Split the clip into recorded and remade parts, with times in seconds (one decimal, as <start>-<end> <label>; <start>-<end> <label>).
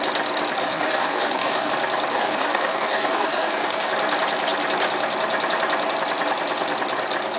0.0-0.6 recorded; 0.6-1.7 remade; 1.7-2.1 recorded; 2.1-3.9 remade; 3.9-7.4 recorded